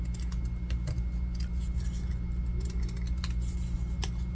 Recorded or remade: recorded